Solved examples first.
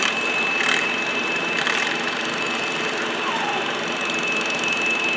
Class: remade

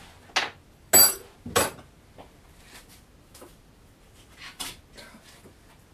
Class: recorded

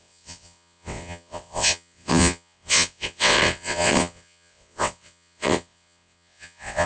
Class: remade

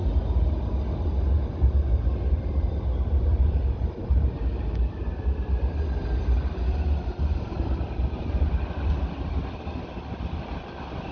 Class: recorded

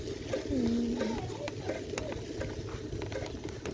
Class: recorded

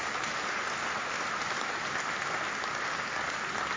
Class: recorded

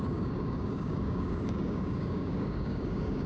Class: remade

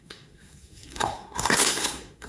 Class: remade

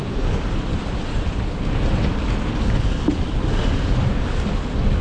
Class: recorded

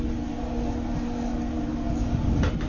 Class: recorded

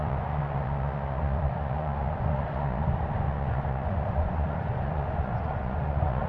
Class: remade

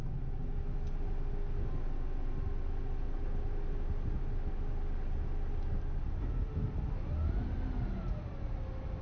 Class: recorded